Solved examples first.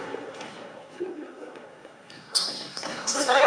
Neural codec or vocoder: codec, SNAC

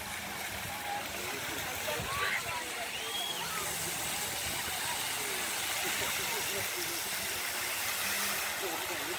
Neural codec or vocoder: none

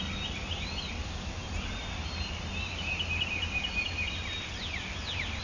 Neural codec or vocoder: none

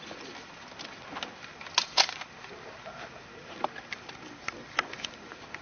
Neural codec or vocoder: none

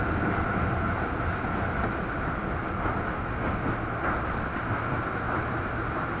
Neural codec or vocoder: none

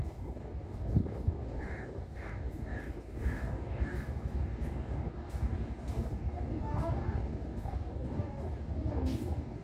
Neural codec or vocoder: codec, DAC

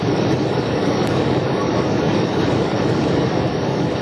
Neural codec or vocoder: codec, DAC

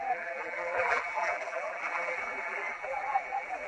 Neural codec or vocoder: vocoder, BigVGAN v2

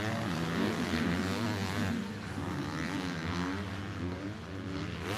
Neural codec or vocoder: none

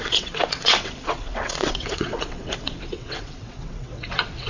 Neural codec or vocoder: vocoder, WaveNeXt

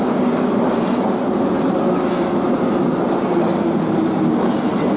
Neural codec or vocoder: none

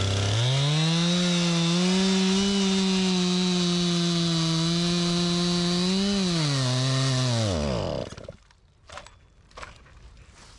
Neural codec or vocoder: none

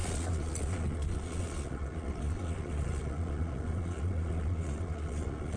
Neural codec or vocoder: vocoder, Vocos